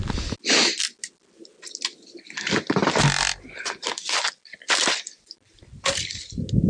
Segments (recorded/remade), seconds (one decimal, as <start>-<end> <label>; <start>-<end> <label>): 0.0-6.7 recorded